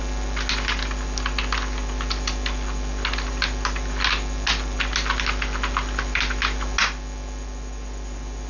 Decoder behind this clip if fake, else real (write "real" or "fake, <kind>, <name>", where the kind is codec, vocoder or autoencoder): real